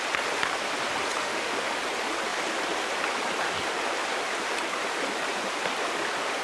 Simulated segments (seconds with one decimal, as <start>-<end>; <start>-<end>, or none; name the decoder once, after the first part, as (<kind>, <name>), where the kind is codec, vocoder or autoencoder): 1.2-1.8 (autoencoder, DAC-VAE)